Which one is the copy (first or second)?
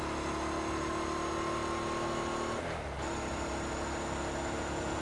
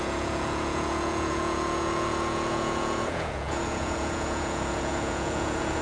second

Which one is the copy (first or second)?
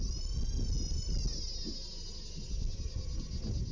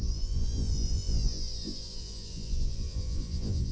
second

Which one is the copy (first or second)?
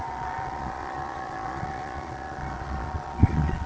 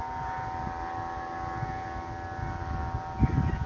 first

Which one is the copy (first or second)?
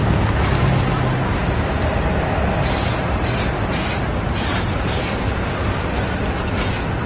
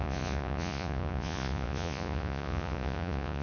second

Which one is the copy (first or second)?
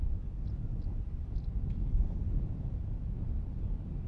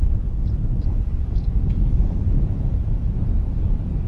second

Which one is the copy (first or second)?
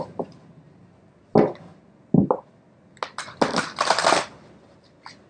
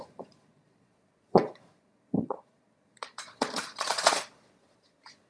second